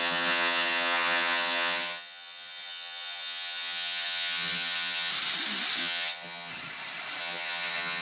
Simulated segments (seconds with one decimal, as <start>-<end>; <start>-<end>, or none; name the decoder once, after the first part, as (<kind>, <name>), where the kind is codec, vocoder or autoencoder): 0.0-5.1 (vocoder, HiFi-GAN); 5.8-6.5; 7.2-8.0